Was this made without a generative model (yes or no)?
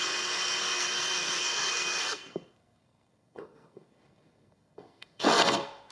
no